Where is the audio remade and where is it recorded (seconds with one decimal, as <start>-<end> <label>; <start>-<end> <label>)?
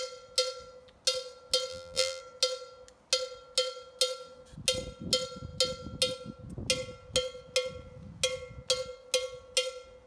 0.0-1.7 recorded; 1.7-2.2 remade; 2.2-10.1 recorded